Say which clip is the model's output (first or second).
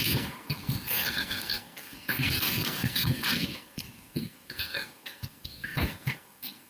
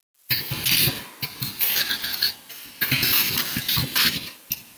first